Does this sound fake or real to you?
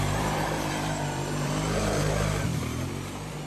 fake